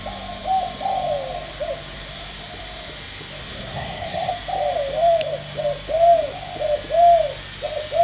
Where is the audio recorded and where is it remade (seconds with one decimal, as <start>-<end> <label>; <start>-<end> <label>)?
0.0-3.4 recorded; 3.4-4.3 remade; 4.3-8.0 recorded